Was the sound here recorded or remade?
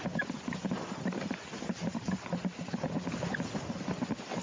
recorded